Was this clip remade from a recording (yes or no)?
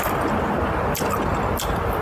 no